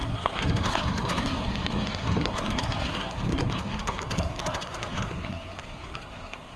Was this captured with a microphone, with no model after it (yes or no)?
no